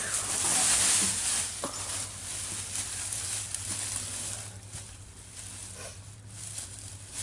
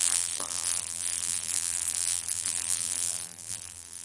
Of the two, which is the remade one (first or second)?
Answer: second